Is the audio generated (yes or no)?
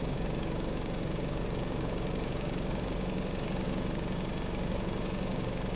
yes